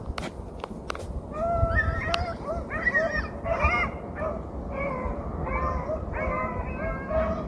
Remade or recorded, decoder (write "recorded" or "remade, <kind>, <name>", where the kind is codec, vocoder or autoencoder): recorded